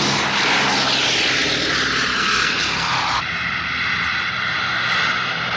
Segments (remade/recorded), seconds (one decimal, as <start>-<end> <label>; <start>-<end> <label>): 0.0-2.1 recorded; 2.1-2.9 remade; 2.9-5.6 recorded